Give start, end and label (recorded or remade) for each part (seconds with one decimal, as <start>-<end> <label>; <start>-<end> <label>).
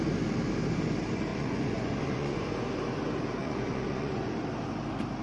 0.0-1.3 recorded; 1.3-2.4 remade; 2.4-3.4 recorded; 3.4-4.3 remade; 4.3-5.2 recorded